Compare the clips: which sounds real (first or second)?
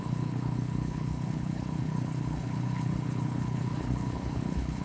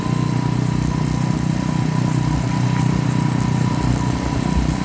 second